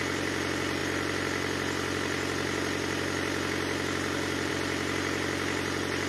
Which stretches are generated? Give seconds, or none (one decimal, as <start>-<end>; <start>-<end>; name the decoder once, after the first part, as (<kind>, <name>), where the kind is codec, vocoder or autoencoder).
none

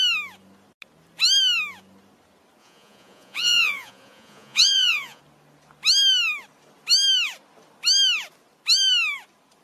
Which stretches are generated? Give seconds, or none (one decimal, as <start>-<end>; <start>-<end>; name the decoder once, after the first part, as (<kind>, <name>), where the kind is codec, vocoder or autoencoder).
2.6-5.2 (vocoder, Vocos)

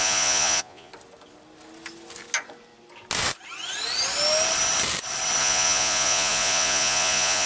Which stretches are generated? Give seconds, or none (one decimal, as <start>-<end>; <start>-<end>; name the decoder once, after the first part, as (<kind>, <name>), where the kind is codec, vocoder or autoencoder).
0.0-0.9 (vocoder, Vocos); 5.4-7.5